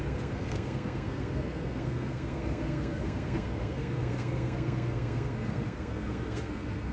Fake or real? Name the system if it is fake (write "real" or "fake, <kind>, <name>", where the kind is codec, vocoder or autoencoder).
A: fake, codec, SNAC